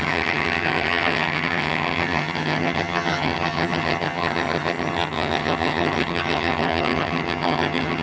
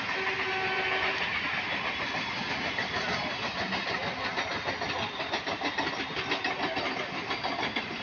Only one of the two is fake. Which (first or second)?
first